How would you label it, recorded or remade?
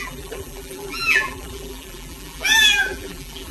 remade